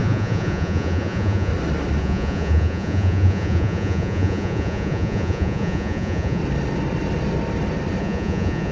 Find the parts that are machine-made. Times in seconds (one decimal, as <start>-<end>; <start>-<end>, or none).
0.0-1.5; 2.0-6.4; 8.0-8.7